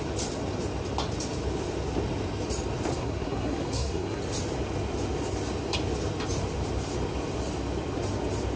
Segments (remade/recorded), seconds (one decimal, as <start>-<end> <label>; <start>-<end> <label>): 0.0-2.9 recorded; 2.9-4.2 remade; 4.2-8.6 recorded